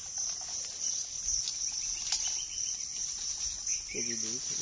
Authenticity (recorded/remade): recorded